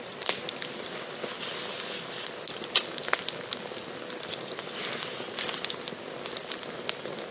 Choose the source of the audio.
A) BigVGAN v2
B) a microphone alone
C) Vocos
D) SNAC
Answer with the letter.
B